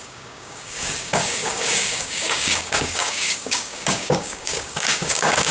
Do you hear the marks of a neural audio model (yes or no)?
yes